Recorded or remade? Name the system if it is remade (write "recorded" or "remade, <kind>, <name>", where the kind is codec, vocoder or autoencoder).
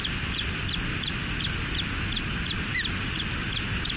recorded